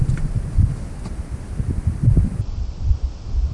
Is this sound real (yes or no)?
yes